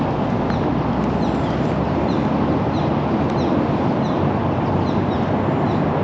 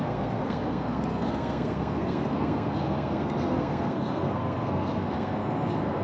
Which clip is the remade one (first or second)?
second